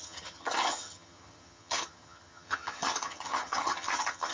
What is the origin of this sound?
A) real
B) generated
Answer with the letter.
B